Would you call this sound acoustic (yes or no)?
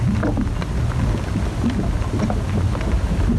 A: yes